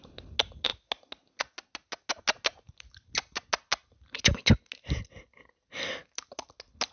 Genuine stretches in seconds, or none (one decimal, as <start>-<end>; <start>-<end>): 0.0-6.9